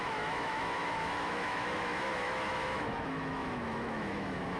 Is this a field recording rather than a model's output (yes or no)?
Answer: no